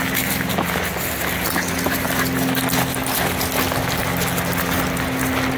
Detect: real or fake real